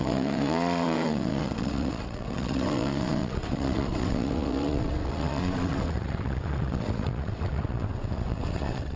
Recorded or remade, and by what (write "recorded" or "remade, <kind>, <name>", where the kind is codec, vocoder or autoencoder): remade, vocoder, WaveNeXt